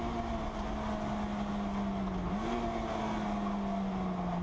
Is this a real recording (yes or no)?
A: yes